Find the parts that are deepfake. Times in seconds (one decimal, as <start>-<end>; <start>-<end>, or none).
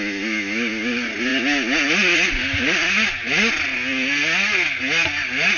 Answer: none